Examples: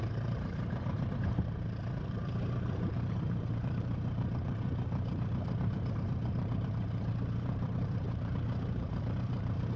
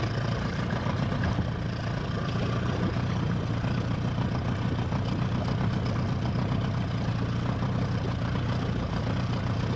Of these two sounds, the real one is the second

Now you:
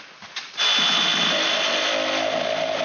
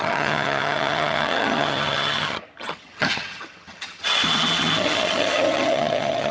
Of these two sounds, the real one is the first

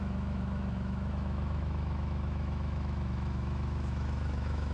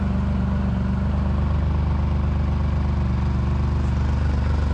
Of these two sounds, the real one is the second